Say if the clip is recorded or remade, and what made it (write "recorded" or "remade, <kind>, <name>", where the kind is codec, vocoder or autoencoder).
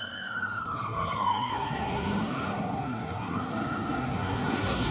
remade, codec, SNAC